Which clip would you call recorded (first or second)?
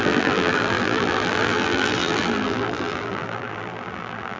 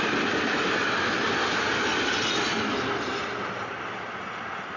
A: second